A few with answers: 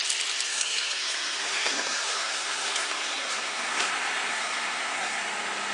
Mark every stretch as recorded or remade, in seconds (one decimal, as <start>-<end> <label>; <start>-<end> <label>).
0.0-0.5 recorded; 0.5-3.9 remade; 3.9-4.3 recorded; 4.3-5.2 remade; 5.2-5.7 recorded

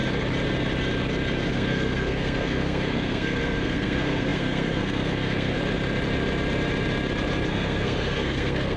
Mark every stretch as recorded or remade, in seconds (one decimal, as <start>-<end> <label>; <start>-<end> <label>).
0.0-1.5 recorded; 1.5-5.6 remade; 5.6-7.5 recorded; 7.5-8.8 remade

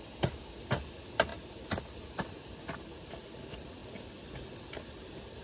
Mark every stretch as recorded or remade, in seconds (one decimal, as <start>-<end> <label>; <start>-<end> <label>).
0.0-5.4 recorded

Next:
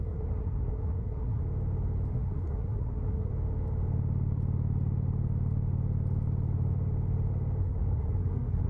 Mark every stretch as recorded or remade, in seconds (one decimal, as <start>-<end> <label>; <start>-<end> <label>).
0.0-1.4 remade; 1.4-2.1 recorded; 2.1-3.3 remade; 3.3-7.6 recorded; 7.6-8.7 remade

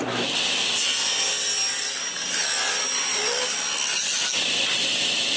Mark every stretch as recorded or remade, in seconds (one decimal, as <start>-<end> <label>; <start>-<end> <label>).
0.0-5.4 recorded

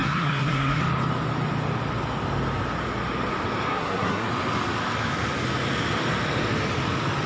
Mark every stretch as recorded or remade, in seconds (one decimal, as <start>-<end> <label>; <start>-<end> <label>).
0.0-0.8 remade; 0.8-3.7 recorded; 3.7-4.3 remade; 4.3-7.3 recorded

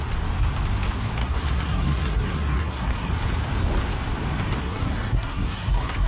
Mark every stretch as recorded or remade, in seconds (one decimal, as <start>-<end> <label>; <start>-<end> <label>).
0.0-1.2 recorded; 1.2-3.1 remade; 3.1-4.6 recorded; 4.6-6.1 remade